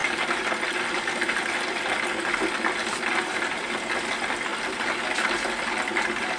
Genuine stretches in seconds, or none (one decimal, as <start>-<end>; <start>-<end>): 0.0-6.4